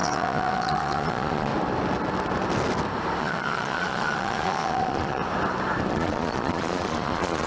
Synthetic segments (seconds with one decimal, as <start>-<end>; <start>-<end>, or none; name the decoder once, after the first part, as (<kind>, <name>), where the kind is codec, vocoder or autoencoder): 0.0-1.5 (vocoder, Vocos); 3.2-5.2; 5.9-7.5